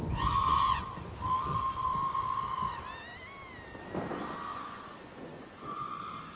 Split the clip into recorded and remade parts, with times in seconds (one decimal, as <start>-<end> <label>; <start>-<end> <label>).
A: 0.0-0.8 remade; 0.8-4.5 recorded; 4.5-5.9 remade; 5.9-6.4 recorded